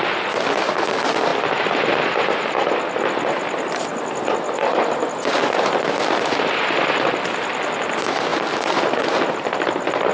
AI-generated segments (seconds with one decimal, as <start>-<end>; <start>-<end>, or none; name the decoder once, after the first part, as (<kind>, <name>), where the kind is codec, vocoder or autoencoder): none